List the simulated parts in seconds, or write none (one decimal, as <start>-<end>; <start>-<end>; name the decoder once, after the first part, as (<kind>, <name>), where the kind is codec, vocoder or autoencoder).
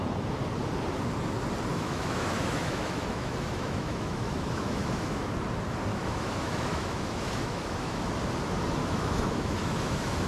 1.7-5.3 (autoencoder, DAC-VAE); 5.9-8.1; 8.8-10.3